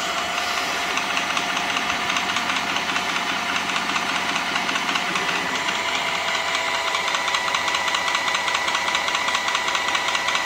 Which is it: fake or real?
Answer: fake